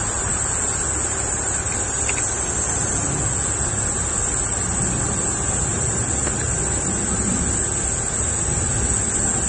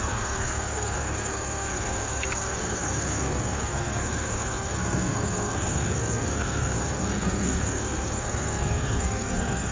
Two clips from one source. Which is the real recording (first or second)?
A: first